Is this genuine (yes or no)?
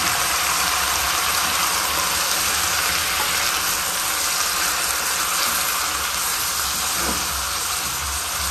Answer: yes